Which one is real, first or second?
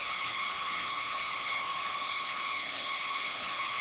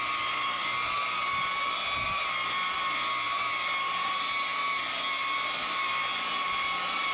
second